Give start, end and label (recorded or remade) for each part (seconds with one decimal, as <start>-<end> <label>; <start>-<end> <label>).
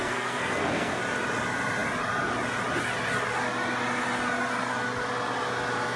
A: 0.0-1.0 remade; 1.0-6.0 recorded